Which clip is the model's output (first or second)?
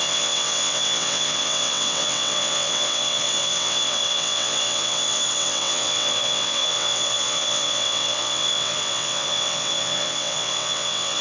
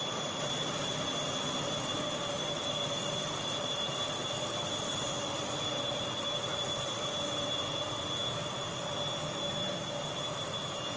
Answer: first